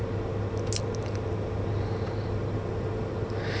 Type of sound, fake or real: real